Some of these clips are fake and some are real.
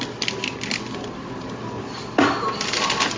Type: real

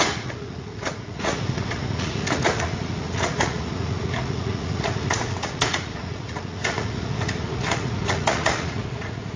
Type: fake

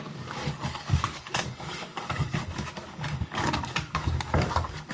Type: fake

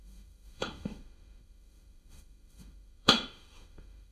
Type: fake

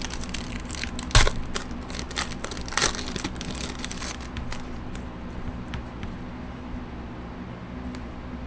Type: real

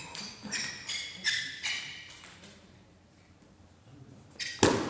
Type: real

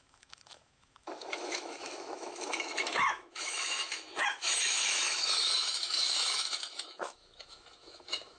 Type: fake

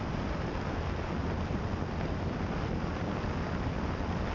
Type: real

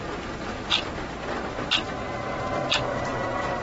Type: real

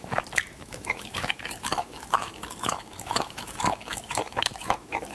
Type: fake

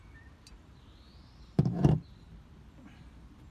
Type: fake